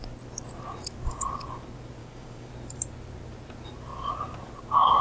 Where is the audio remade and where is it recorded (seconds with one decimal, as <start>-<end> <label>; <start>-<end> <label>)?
0.0-2.0 recorded; 2.0-2.5 remade; 2.5-5.0 recorded